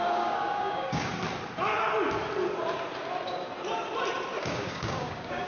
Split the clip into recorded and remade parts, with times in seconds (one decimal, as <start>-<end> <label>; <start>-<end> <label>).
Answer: 0.0-1.1 remade; 1.1-4.4 recorded; 4.4-5.5 remade